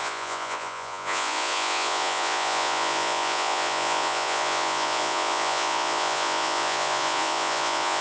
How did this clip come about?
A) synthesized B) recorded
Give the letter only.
A